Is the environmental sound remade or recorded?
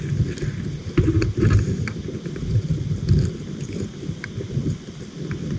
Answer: recorded